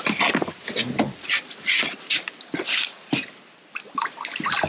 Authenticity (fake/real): real